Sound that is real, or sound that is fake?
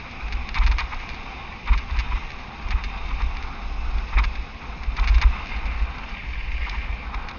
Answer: real